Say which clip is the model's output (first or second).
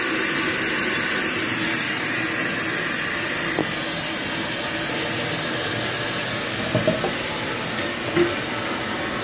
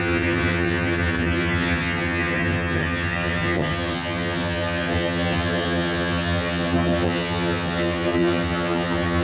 second